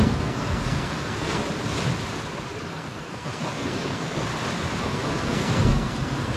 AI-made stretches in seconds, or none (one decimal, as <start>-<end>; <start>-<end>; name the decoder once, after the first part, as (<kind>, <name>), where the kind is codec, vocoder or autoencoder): 0.0-1.4 (codec, SNAC); 2.7-4.3; 4.8-6.4